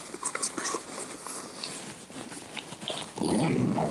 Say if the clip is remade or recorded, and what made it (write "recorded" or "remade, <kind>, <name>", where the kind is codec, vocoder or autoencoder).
recorded